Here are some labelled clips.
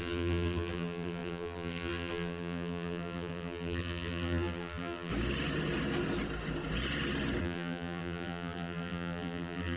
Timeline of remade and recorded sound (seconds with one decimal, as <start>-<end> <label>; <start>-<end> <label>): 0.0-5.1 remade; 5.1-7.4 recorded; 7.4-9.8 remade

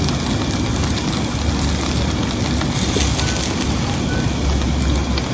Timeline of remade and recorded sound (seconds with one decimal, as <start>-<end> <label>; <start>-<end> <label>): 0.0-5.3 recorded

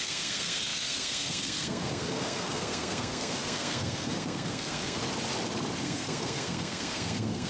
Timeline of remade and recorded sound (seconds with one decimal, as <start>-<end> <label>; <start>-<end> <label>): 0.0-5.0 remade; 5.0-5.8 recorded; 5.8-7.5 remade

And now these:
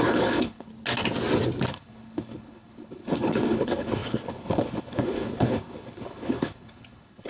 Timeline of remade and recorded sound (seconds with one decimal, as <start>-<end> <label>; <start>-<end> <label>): 0.0-0.7 remade; 0.7-1.7 recorded; 1.7-7.3 remade

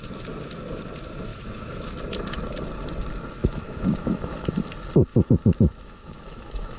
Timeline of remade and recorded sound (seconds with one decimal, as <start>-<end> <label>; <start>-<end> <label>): 0.0-1.3 recorded; 1.3-1.9 remade; 1.9-3.4 recorded; 3.4-4.5 remade; 4.5-5.1 recorded; 5.1-6.8 remade